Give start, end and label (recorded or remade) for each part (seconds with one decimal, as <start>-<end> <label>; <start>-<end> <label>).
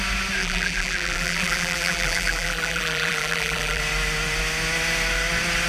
0.0-0.4 recorded; 0.4-3.8 remade; 3.8-5.7 recorded